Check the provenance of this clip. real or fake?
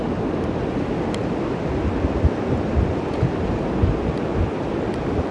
real